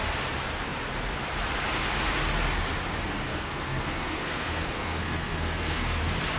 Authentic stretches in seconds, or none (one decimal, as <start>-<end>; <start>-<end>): 0.0-3.3; 6.0-6.4